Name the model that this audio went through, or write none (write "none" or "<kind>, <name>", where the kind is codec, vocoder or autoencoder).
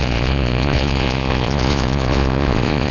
vocoder, Vocos